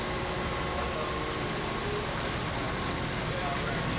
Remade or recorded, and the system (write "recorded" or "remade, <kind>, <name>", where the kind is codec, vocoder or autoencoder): recorded